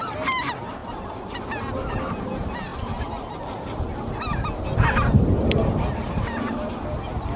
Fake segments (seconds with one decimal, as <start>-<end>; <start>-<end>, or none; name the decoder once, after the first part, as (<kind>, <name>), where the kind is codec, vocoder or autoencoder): none